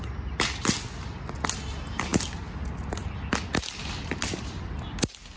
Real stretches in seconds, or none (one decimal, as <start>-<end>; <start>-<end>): 0.0-5.4